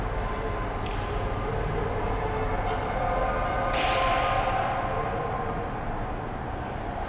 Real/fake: real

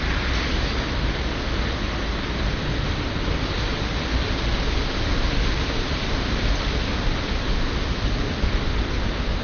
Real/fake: real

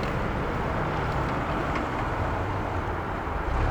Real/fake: real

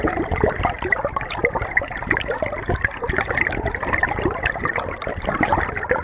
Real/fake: real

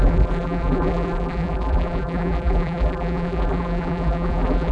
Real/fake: fake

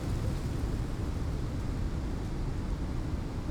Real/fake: real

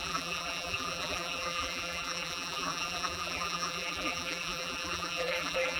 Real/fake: fake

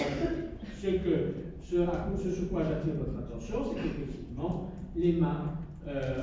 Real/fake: real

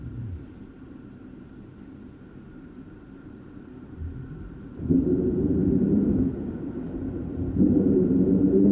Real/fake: fake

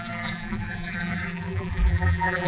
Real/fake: fake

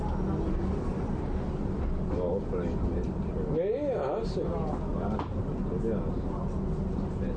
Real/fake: real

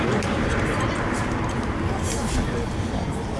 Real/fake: fake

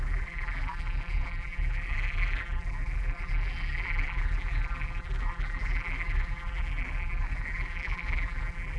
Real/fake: fake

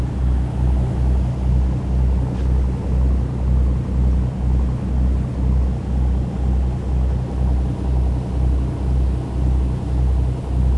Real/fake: real